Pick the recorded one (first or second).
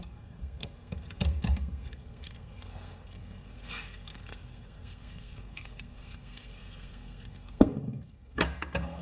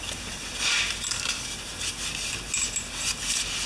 second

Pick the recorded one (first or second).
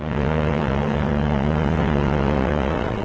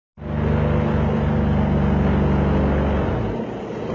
second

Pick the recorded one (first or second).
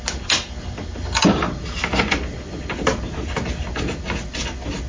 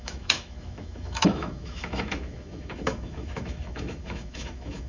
first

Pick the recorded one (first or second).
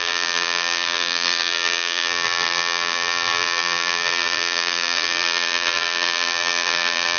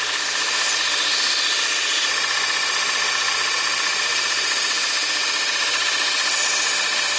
second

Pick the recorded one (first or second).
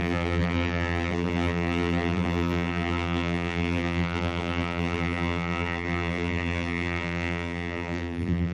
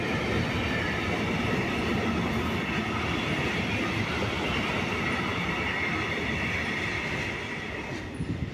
second